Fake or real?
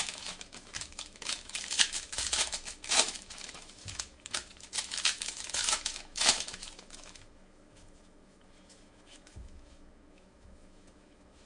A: fake